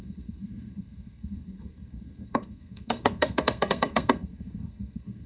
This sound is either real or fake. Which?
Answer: fake